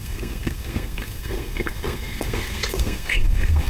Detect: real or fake fake